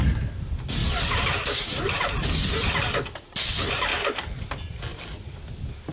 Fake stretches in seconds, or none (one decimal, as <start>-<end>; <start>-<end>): 0.8-2.1; 3.9-4.4; 4.9-5.4